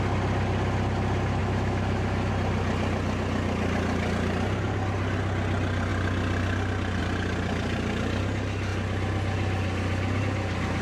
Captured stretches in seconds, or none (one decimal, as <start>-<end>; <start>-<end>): 0.0-1.4; 2.3-10.8